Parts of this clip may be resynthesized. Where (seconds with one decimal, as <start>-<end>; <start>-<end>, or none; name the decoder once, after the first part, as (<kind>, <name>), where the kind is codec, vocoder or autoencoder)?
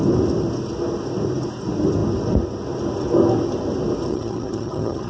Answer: 4.1-5.1 (vocoder, HiFi-GAN)